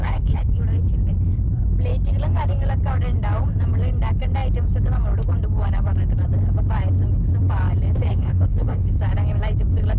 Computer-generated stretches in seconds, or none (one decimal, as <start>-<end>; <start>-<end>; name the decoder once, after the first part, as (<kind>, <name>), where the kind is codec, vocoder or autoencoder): 0.0-0.6 (codec, HILCodec); 8.1-8.9